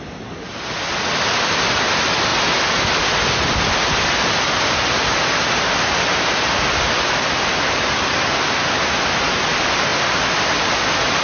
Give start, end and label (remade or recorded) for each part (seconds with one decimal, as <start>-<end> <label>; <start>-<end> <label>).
0.0-11.2 recorded